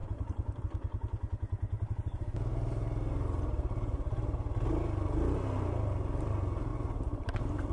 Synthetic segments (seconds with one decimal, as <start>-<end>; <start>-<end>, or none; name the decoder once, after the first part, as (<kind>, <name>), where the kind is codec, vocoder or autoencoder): 0.0-0.6 (vocoder, BigVGAN v2); 2.5-4.5; 6.7-7.7